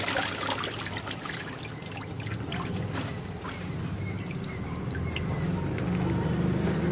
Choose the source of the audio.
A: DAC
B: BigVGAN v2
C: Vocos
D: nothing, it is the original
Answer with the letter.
D